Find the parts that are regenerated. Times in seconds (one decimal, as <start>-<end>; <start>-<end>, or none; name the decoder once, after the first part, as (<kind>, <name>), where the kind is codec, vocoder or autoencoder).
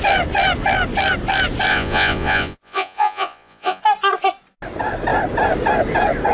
1.7-3.8 (vocoder, Vocos)